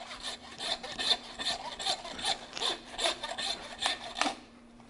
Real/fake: fake